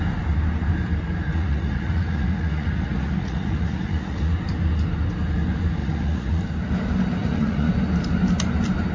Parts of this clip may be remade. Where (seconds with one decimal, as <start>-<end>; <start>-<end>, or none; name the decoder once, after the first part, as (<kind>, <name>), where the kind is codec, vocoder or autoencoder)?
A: 1.3-4.3 (vocoder, Vocos); 5.8-6.4; 7.2-7.7